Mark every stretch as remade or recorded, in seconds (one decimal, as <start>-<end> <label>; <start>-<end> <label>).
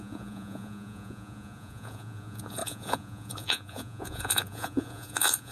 0.0-5.5 remade